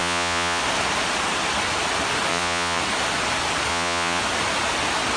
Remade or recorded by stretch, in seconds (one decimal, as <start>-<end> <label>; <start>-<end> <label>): 0.0-0.6 remade; 0.6-2.3 recorded; 2.3-2.8 remade; 2.8-3.7 recorded; 3.7-4.2 remade; 4.2-5.2 recorded

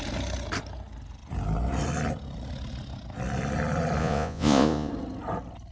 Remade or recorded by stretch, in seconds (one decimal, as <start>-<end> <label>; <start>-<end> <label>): 0.0-4.0 recorded; 4.0-4.9 remade; 4.9-5.7 recorded

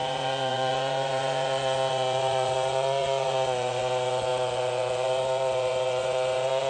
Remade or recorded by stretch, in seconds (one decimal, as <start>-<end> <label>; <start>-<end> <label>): 0.0-6.7 remade

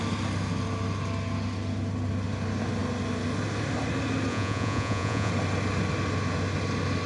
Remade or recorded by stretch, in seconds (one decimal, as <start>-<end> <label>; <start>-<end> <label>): 0.0-4.3 recorded; 4.3-5.3 remade; 5.3-7.1 recorded